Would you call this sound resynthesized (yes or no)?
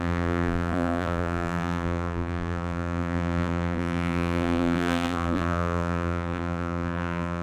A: yes